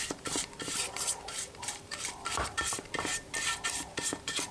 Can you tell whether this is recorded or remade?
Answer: remade